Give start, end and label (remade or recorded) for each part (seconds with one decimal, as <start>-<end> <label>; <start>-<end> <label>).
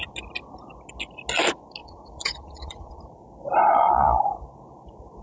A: 0.0-1.8 recorded; 1.8-3.0 remade; 3.0-3.7 recorded; 3.7-4.2 remade; 4.2-5.2 recorded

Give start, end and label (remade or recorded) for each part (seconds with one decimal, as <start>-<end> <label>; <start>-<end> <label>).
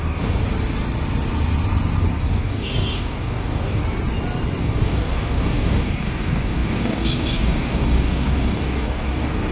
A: 0.0-0.4 remade; 0.4-2.2 recorded; 2.2-3.8 remade; 3.8-4.6 recorded; 4.6-9.5 remade